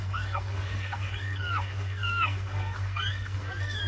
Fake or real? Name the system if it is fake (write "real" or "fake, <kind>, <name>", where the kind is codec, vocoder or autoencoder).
fake, codec, SNAC